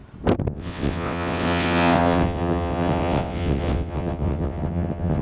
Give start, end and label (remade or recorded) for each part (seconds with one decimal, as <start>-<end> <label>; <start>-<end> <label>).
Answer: 0.0-0.5 recorded; 0.5-5.2 remade